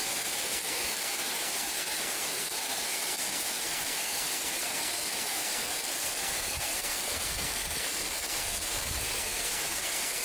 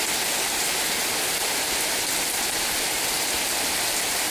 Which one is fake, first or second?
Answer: first